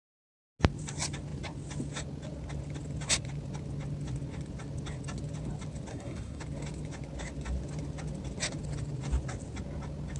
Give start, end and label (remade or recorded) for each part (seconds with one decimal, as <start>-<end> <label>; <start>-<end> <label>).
0.0-5.9 recorded; 5.9-6.4 remade; 6.4-10.2 recorded